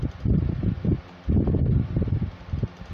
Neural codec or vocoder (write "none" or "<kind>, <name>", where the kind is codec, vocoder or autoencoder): none